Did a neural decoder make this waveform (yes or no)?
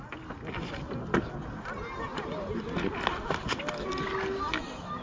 no